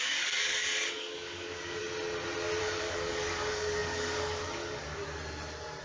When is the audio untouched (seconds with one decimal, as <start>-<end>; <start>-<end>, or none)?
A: 1.8-2.6; 5.0-5.8